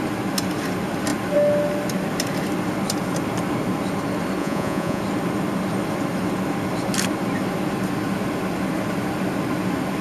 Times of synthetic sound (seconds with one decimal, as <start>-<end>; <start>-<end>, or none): 4.4-5.0